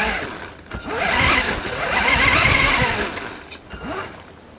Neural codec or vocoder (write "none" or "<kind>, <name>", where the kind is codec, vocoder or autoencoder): none